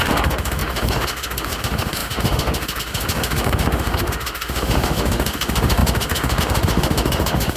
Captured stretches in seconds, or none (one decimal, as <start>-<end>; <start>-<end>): none